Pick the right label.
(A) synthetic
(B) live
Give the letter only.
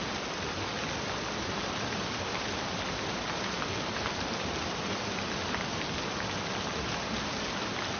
B